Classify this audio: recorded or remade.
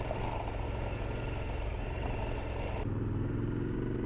remade